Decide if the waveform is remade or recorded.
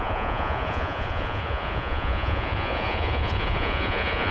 remade